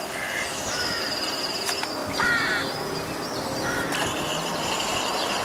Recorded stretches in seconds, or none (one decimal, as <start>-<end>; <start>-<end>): 0.0-0.5; 1.0-5.4